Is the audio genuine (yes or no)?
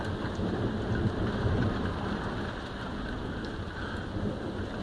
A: yes